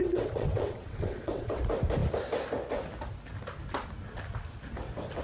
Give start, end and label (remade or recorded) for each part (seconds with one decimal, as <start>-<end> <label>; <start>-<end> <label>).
0.0-1.6 remade; 1.6-5.2 recorded